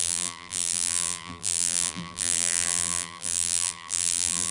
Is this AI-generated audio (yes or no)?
yes